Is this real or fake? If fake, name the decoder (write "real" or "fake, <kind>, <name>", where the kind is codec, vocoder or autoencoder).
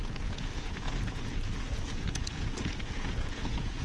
fake, vocoder, Vocos